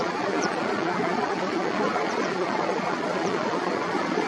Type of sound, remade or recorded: remade